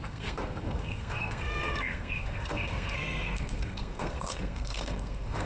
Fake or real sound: fake